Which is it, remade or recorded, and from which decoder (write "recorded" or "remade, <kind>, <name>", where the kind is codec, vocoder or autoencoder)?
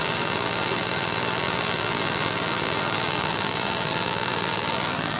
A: remade, vocoder, BigVGAN v2